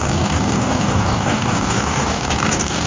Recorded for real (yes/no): no